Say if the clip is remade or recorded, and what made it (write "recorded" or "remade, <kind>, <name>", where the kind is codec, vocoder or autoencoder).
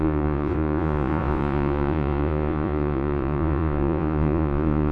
remade, vocoder, Vocos